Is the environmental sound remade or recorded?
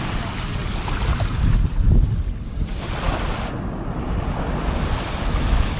recorded